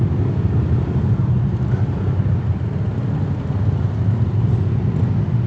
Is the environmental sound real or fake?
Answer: real